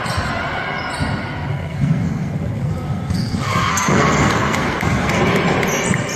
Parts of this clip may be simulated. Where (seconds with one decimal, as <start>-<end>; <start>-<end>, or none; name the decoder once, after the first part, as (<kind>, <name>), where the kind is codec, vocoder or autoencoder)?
1.5-5.2 (codec, SNAC)